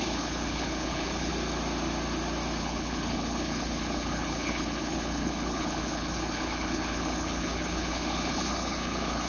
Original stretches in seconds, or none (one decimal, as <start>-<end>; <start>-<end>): 1.3-2.6